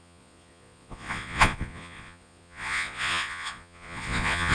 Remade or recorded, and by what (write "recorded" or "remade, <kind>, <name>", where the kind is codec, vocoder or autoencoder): remade, vocoder, Vocos